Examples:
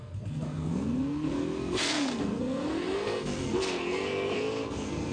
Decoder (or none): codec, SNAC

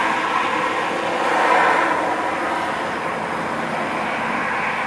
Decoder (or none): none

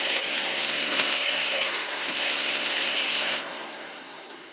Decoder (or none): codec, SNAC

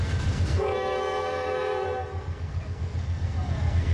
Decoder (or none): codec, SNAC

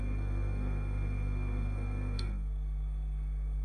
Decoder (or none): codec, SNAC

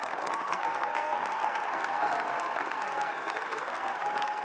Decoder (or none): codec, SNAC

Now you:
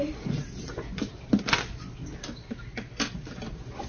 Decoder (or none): none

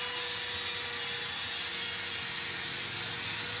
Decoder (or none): none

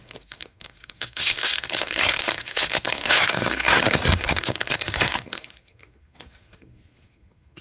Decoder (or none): codec, SNAC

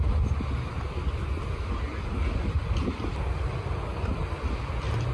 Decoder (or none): none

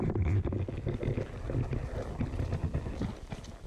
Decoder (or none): none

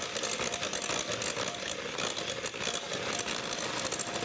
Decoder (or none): none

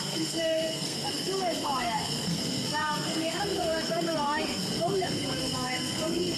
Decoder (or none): codec, SNAC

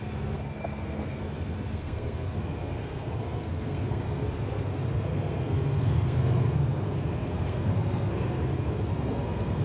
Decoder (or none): codec, SNAC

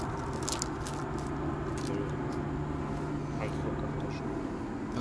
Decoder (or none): none